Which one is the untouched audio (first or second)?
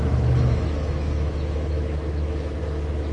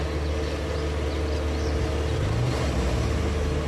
second